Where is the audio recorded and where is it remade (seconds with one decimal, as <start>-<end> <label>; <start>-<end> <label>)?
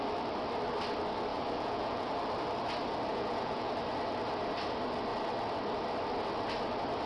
0.0-1.3 recorded; 1.3-2.1 remade; 2.1-3.1 recorded; 3.1-3.7 remade; 3.7-7.1 recorded